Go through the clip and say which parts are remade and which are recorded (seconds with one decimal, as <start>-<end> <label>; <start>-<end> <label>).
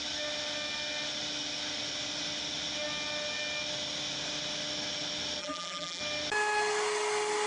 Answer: 0.0-5.4 recorded; 5.4-6.0 remade; 6.0-7.5 recorded